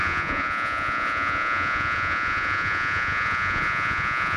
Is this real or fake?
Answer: fake